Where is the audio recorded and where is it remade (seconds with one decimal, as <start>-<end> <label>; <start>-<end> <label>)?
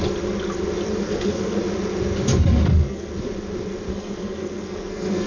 0.0-1.0 recorded; 1.0-1.6 remade; 1.6-2.6 recorded; 2.6-3.1 remade; 3.1-3.9 recorded; 3.9-5.3 remade